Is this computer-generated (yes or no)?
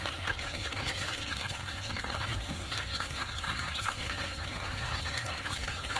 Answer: yes